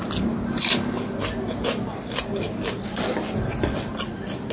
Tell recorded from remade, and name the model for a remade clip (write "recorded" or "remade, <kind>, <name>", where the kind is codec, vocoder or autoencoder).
recorded